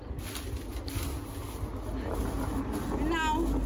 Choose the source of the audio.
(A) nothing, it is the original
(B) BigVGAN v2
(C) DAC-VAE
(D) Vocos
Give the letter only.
A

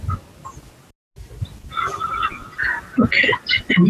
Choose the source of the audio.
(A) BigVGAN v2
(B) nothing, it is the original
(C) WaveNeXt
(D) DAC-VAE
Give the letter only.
B